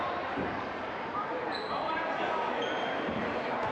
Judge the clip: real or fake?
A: fake